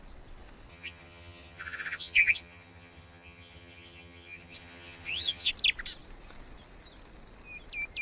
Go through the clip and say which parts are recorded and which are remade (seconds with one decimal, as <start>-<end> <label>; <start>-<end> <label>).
0.0-0.7 recorded; 0.7-5.5 remade; 5.5-8.0 recorded